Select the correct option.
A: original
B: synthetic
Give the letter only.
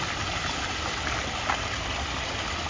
A